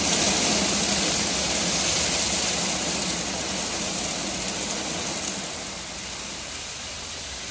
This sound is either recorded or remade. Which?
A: recorded